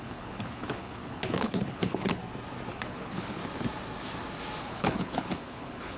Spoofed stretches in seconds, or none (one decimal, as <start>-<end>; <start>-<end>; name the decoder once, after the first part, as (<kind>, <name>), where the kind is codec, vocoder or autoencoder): 0.0-2.2 (codec, HILCodec); 2.7-3.4; 4.6-6.0